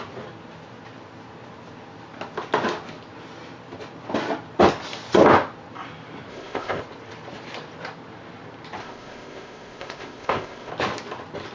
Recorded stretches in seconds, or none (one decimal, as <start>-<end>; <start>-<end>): 0.0-6.3; 6.8-8.8; 10.7-11.5